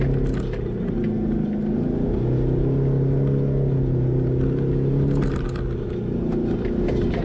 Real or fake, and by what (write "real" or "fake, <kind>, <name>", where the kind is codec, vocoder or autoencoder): real